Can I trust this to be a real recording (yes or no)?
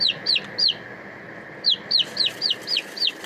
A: yes